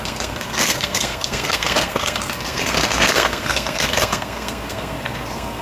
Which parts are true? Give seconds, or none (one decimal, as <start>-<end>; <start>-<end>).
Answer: none

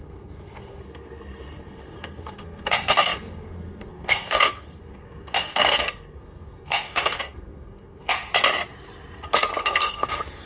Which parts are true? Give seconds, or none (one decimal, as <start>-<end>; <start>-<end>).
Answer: 8.3-9.5